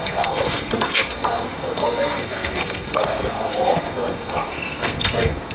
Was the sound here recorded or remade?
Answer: remade